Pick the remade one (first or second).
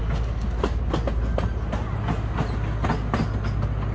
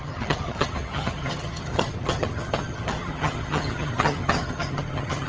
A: second